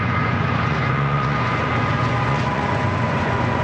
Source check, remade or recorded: remade